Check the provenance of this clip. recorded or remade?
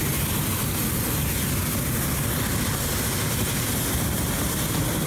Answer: recorded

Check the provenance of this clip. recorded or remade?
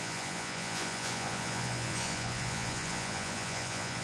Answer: remade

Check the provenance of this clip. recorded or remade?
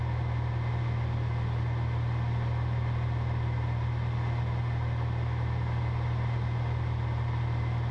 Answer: recorded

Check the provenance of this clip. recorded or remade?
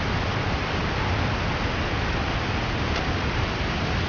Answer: recorded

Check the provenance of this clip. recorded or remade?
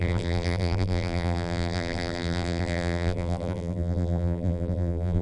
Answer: remade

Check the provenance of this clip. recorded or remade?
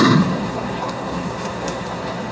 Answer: remade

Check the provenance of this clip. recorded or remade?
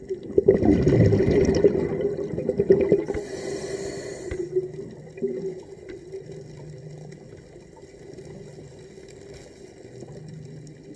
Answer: recorded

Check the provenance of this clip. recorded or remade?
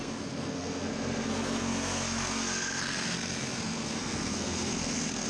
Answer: remade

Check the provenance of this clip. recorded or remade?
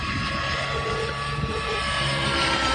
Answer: remade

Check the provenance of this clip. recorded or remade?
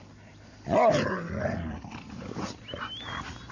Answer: recorded